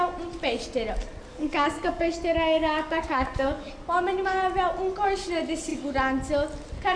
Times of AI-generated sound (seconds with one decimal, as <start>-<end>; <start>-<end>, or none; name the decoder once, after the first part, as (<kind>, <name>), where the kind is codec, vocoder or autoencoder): 1.3-3.7 (codec, DAC)